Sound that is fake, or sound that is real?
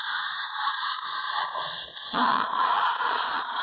fake